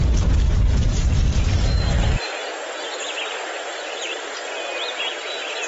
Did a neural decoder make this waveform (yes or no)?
no